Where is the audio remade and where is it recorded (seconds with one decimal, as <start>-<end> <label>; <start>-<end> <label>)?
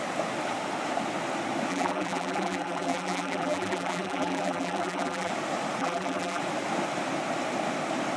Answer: 0.0-1.7 recorded; 1.7-5.3 remade; 5.3-5.8 recorded; 5.8-6.4 remade; 6.4-8.2 recorded